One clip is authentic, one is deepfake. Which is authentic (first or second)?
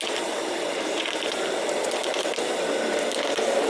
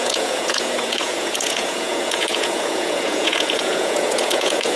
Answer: first